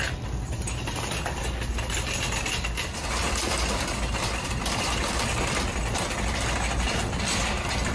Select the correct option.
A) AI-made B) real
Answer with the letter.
B